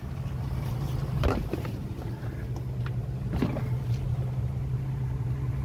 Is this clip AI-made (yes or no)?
no